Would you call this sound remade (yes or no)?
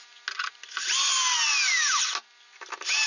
no